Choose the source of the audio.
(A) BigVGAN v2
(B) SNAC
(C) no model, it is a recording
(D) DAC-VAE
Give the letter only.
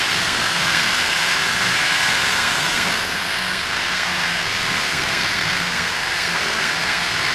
B